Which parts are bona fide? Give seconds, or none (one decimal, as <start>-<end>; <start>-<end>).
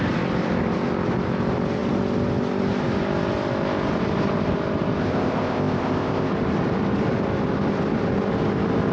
0.0-5.0; 6.3-8.9